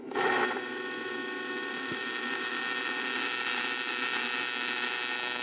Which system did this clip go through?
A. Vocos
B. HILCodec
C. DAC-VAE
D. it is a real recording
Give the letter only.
C